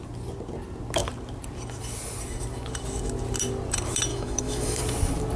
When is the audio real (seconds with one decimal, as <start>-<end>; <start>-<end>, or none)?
0.0-4.1; 4.8-5.4